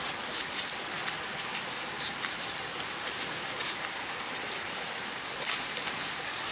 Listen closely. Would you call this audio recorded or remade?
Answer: recorded